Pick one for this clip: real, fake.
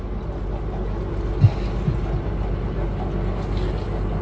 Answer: real